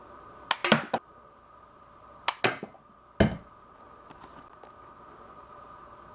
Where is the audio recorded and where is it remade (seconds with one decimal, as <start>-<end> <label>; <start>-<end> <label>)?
0.0-6.1 recorded